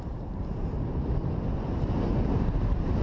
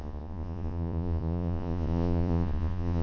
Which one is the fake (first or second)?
second